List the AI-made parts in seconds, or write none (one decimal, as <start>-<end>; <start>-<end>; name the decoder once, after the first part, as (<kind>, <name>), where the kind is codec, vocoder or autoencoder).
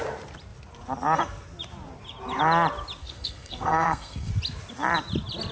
3.0-4.3 (codec, SNAC)